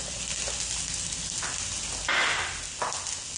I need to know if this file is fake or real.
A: real